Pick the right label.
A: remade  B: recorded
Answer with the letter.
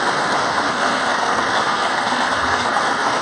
A